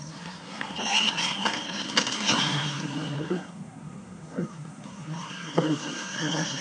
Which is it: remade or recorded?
remade